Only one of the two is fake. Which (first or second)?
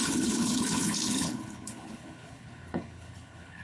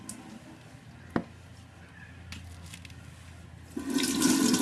first